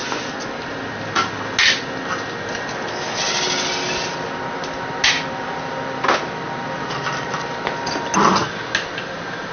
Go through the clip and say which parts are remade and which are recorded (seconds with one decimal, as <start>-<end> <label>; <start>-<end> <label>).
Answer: 0.0-9.5 recorded